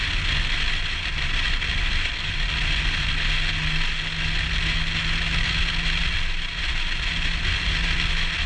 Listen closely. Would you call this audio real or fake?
real